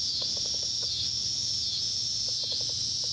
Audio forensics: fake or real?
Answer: real